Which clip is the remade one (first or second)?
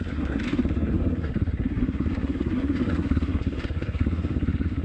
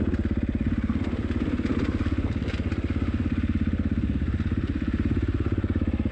first